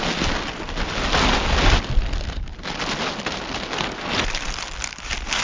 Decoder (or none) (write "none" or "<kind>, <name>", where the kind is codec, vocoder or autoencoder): none